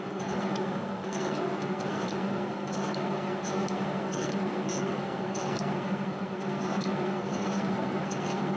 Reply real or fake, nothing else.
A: fake